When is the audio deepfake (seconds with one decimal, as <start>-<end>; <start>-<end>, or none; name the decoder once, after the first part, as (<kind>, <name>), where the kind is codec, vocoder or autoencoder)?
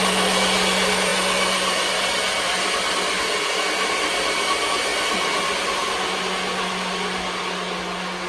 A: none